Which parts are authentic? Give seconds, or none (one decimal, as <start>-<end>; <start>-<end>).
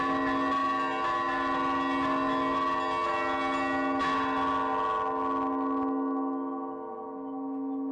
0.0-7.9